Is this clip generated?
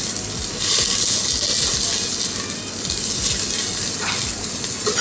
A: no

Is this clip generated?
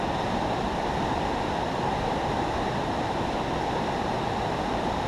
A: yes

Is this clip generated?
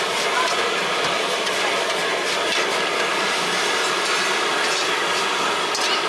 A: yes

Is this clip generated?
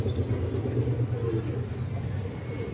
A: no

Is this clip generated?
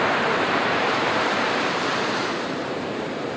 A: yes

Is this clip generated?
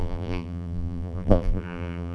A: yes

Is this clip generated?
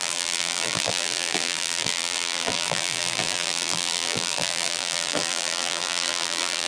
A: yes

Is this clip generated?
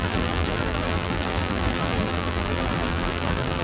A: yes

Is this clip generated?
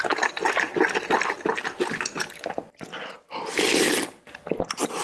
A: no